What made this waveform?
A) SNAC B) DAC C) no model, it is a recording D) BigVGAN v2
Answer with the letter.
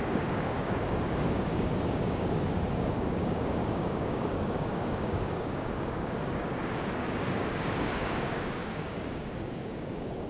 B